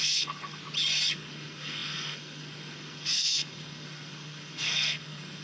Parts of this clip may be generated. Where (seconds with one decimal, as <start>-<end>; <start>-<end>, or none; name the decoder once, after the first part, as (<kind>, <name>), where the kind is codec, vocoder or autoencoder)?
0.0-0.6 (codec, SNAC); 1.1-5.4